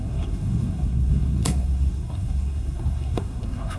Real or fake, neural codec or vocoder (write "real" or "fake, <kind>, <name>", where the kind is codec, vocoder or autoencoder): fake, codec, SNAC